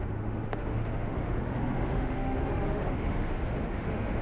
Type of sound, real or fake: fake